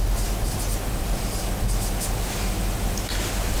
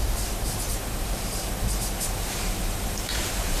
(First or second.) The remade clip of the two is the second